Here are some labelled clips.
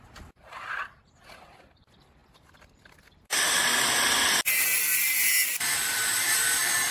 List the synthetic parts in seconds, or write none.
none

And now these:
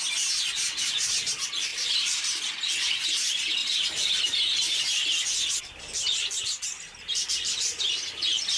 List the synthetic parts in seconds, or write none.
1.7-2.5; 3.6-4.2